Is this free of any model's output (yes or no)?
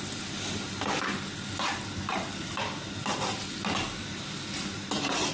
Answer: yes